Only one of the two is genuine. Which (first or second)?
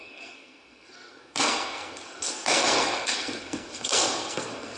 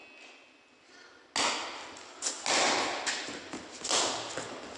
second